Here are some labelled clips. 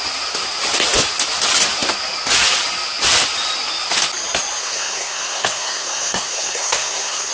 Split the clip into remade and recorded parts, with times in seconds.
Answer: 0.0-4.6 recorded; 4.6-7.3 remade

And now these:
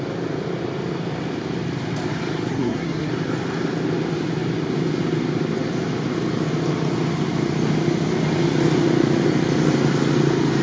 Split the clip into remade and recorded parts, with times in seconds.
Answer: 0.0-2.5 recorded; 2.5-3.1 remade; 3.1-10.6 recorded

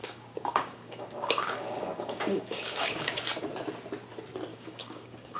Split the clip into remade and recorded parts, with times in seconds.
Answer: 0.0-3.2 remade; 3.2-4.5 recorded; 4.5-5.4 remade

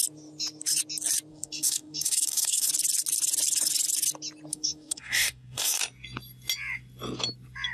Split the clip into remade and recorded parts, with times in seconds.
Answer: 0.0-1.3 recorded; 1.3-2.7 remade; 2.7-4.5 recorded; 4.5-5.8 remade; 5.8-7.7 recorded

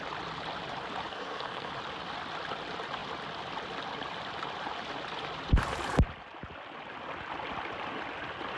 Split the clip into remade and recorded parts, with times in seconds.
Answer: 0.0-1.1 recorded; 1.1-1.7 remade; 1.7-8.6 recorded